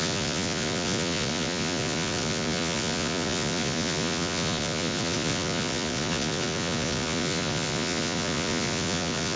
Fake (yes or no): yes